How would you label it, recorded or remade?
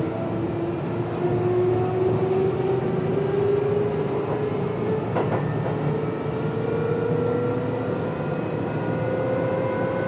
recorded